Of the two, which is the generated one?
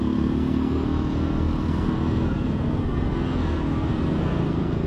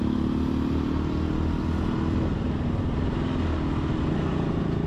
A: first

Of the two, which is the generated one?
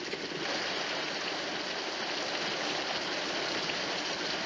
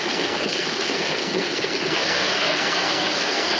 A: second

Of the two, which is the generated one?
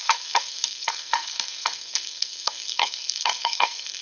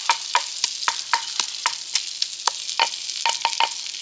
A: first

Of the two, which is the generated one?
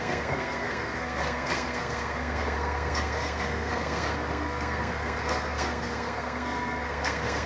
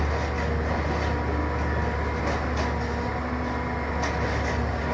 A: first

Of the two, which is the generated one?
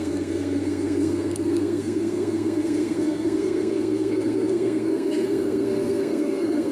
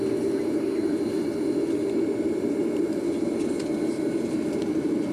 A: first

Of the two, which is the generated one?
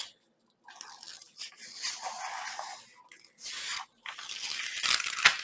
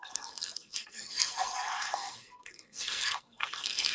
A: second